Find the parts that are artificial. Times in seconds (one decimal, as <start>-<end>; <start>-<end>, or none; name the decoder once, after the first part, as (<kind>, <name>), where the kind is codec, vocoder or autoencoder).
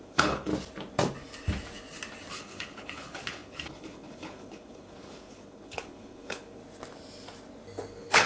0.0-0.5 (codec, HILCodec); 2.3-6.6; 7.9-8.3